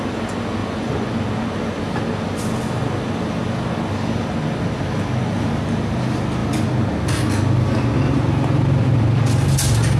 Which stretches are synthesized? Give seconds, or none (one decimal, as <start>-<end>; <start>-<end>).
0.6-1.1

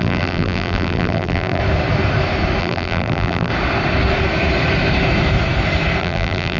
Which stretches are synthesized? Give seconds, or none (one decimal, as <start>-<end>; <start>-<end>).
0.0-1.6; 2.6-3.5; 6.0-6.6

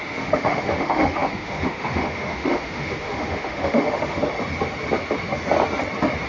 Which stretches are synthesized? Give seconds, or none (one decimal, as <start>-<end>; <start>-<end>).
0.0-4.2